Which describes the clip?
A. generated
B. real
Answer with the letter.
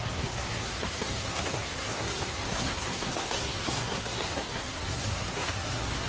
A